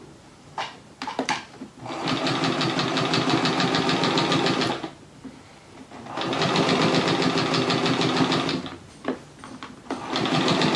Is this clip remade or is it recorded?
recorded